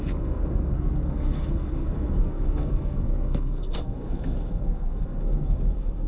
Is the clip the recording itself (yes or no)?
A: no